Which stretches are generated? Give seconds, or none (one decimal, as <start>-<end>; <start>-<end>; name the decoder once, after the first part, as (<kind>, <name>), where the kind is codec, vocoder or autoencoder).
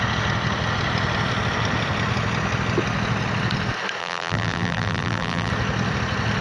4.0-5.5 (vocoder, BigVGAN v2)